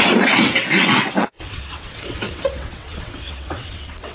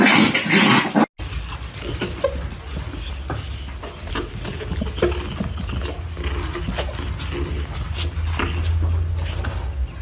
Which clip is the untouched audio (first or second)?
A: second